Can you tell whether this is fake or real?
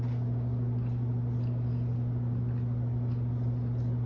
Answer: real